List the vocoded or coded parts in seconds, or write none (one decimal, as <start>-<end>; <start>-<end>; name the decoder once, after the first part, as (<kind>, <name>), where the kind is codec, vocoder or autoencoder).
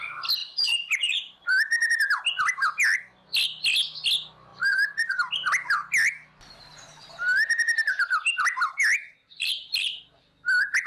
0.4-1.5 (vocoder, BigVGAN v2); 4.5-5.3; 9.2-10.2